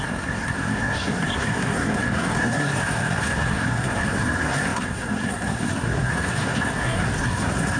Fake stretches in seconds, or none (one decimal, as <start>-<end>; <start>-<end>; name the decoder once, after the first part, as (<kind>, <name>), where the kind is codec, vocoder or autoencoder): 0.0-7.8 (codec, SNAC)